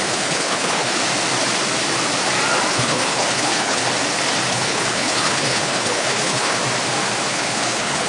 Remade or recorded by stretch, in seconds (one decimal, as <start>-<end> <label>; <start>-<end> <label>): 0.0-1.0 remade; 1.0-2.7 recorded; 2.7-3.8 remade; 3.8-4.5 recorded; 4.5-6.6 remade; 6.6-7.3 recorded; 7.3-8.1 remade